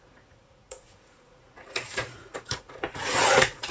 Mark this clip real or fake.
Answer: fake